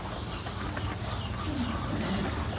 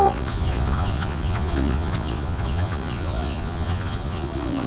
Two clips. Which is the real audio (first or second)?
first